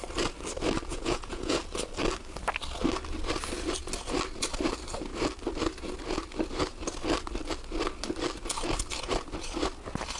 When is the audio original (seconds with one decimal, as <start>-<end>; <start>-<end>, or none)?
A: 0.0-0.9; 1.6-10.2